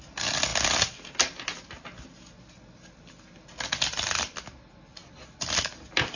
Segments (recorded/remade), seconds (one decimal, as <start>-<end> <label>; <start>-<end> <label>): 0.0-6.2 recorded